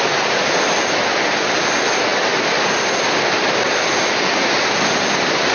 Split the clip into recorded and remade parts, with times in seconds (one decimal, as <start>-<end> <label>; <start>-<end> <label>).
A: 0.0-5.5 recorded